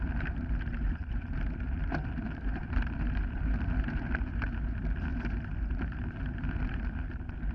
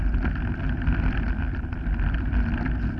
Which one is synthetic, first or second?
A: first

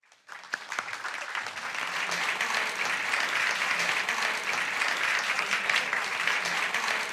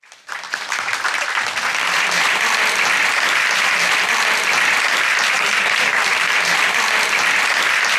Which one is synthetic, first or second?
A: second